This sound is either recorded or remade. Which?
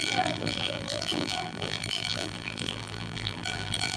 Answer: remade